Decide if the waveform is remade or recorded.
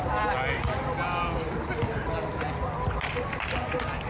recorded